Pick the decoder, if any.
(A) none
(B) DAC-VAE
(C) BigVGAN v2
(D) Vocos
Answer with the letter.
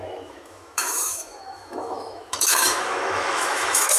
B